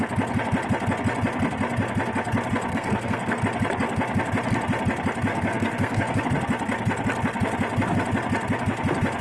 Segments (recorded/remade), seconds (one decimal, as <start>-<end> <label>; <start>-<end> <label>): 0.0-2.7 recorded; 2.7-3.4 remade; 3.4-5.3 recorded; 5.3-6.2 remade; 6.2-9.2 recorded